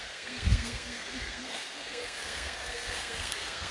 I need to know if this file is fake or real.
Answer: fake